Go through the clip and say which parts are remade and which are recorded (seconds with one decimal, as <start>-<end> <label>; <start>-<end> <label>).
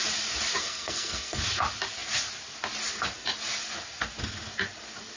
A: 0.0-0.6 recorded; 0.6-1.4 remade; 1.4-5.2 recorded